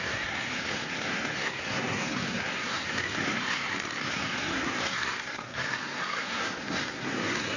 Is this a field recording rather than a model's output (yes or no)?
no